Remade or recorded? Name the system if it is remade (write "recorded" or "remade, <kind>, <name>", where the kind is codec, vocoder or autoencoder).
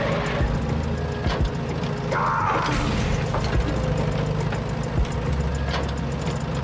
recorded